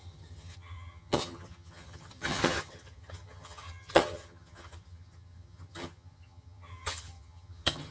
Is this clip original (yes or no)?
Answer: no